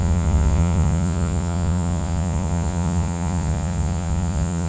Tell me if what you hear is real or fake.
fake